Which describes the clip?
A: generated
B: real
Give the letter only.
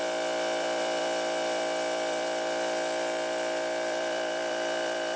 A